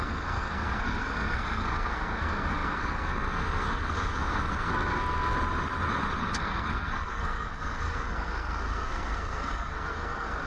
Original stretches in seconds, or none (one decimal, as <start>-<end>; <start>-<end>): 5.3-6.2